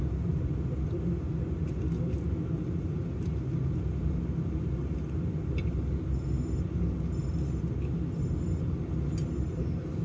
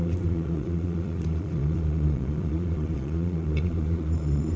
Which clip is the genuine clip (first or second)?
first